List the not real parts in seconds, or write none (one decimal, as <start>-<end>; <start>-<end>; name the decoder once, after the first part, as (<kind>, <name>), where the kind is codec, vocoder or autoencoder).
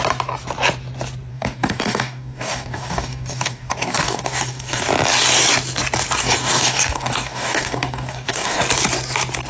1.3-4.8 (codec, DAC); 6.2-8.6